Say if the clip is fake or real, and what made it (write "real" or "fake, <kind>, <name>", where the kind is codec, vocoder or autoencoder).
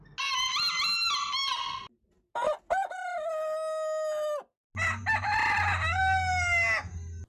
real